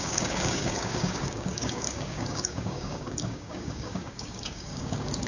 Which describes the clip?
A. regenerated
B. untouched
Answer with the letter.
A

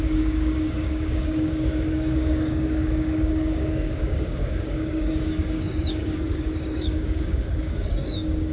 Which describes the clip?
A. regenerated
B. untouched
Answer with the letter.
A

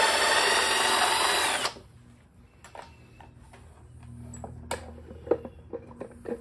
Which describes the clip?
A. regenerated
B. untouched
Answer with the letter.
B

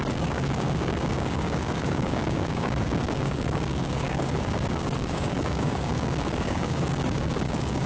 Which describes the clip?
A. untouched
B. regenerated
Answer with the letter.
B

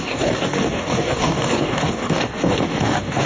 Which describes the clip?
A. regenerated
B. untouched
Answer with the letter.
A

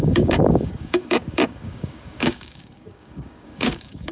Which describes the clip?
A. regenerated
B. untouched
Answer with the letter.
A